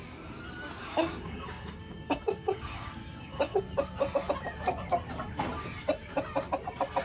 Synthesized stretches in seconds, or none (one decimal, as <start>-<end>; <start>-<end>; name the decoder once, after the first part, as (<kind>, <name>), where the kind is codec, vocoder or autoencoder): 0.8-3.6 (codec, DAC)